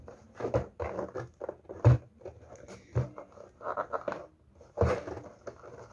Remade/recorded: recorded